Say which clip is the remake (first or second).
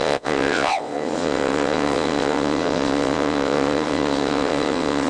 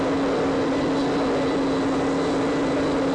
first